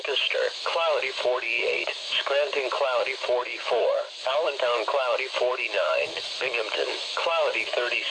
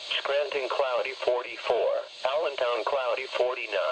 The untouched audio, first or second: second